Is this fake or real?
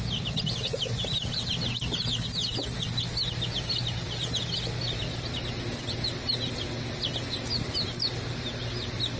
real